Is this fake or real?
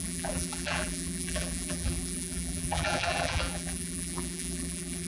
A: fake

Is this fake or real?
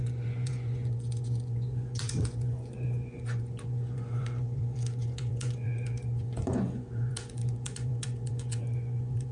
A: fake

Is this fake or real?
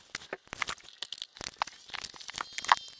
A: real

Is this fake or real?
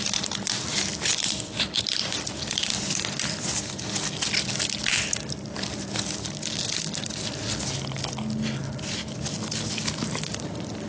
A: real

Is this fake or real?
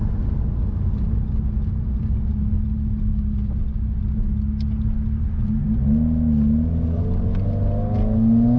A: real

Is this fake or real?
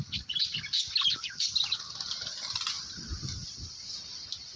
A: real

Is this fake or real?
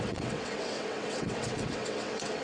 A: fake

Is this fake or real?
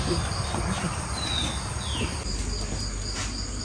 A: real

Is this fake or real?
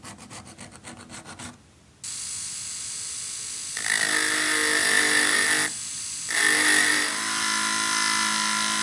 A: real